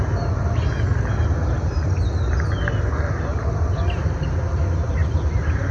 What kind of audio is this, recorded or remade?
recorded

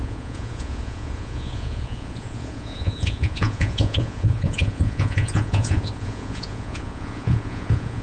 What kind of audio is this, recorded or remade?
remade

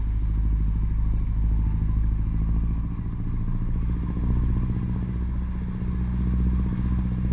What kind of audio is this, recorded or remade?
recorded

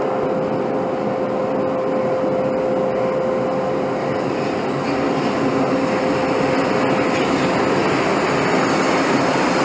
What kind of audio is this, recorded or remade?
recorded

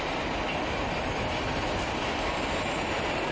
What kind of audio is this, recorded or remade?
recorded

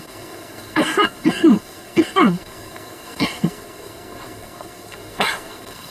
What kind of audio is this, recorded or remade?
remade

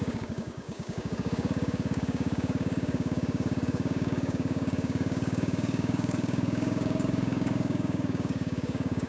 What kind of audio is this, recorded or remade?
remade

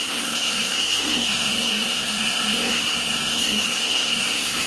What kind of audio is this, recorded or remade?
remade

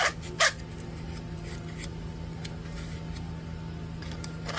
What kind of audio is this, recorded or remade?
recorded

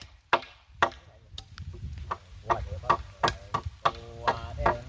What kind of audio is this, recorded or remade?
recorded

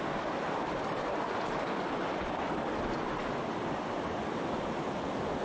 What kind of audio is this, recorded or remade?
recorded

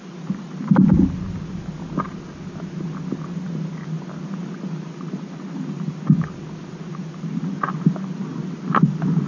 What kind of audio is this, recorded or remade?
recorded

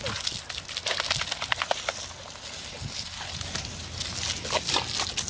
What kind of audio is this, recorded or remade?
recorded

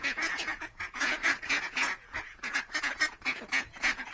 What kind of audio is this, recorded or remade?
remade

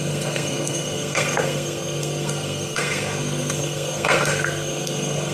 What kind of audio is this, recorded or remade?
remade